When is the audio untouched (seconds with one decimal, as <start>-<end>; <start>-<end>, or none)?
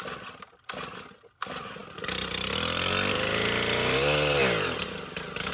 0.0-5.5